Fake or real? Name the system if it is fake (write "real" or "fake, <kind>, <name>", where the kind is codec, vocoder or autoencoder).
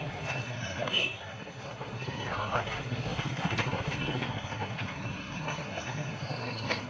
fake, codec, SNAC